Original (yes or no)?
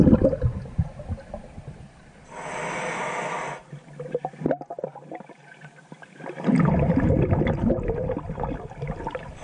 yes